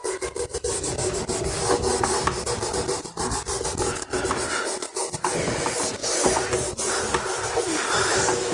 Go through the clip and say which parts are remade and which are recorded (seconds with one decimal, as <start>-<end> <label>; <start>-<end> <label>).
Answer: 0.0-6.0 recorded; 6.0-6.9 remade; 6.9-8.5 recorded